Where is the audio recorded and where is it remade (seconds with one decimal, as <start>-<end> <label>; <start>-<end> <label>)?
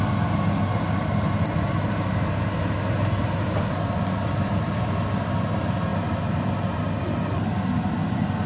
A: 0.0-8.5 recorded